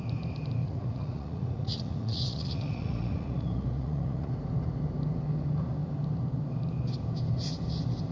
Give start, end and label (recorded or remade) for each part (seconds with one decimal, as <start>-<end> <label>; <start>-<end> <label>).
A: 0.0-0.6 recorded; 0.6-4.3 remade; 4.3-8.1 recorded